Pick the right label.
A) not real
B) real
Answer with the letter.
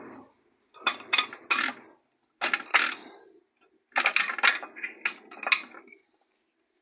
B